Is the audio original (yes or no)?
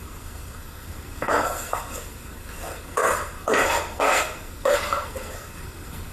no